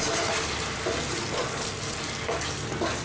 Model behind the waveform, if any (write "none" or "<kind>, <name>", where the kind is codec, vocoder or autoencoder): none